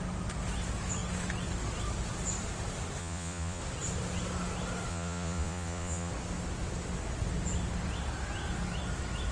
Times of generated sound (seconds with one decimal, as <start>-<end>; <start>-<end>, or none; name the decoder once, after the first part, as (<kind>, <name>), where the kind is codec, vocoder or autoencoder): 3.0-3.6 (vocoder, Vocos); 4.9-6.1